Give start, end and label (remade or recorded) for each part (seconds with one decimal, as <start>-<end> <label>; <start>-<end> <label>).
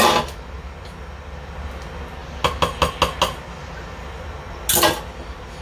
0.0-5.6 recorded